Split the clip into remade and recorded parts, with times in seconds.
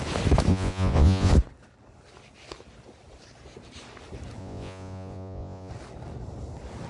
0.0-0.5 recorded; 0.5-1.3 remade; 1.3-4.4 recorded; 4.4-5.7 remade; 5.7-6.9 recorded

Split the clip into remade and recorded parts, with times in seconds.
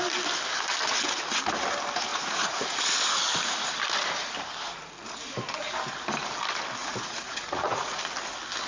0.0-2.1 recorded; 2.1-2.8 remade; 2.8-6.8 recorded; 6.8-8.0 remade; 8.0-8.7 recorded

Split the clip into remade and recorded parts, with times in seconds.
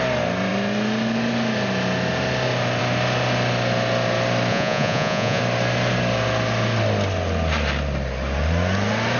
0.0-4.5 recorded; 4.5-5.4 remade; 5.4-9.2 recorded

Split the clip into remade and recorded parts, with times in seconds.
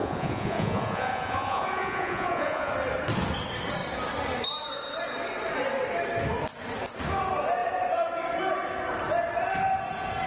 0.0-2.7 remade; 2.7-10.3 recorded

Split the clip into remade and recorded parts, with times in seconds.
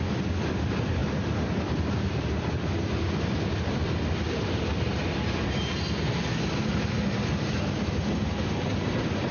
0.0-9.3 recorded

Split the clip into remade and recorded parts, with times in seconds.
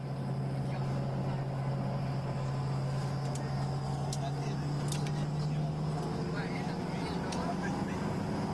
0.0-8.5 recorded